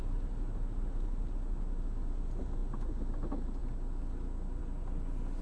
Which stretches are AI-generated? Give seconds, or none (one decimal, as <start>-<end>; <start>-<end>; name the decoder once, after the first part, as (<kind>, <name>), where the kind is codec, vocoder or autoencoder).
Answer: none